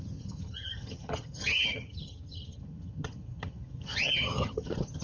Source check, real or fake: fake